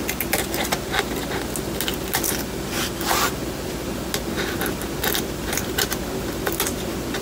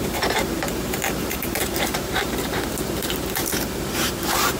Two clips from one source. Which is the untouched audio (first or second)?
first